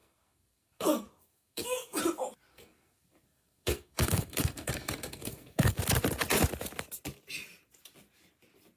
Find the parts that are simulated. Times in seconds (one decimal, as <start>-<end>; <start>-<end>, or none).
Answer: 0.0-2.0; 2.5-5.8